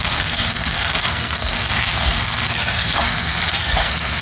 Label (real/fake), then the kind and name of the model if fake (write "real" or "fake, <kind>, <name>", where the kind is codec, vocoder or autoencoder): fake, codec, SNAC